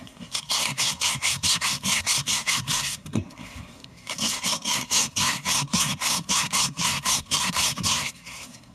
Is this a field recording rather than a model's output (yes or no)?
no